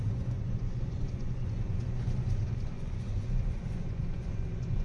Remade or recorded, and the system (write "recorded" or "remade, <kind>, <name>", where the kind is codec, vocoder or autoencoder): remade, vocoder, Vocos